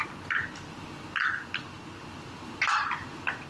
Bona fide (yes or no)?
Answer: yes